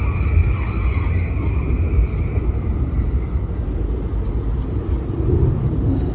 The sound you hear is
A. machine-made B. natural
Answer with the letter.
B